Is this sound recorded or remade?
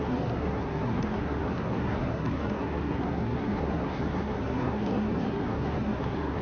remade